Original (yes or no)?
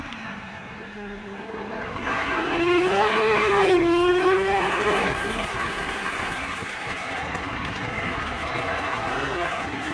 no